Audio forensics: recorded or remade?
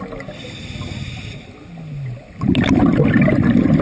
recorded